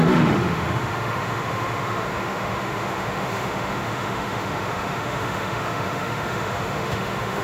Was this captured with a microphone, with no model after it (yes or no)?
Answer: no